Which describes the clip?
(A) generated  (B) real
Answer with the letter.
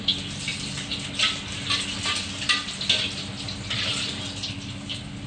B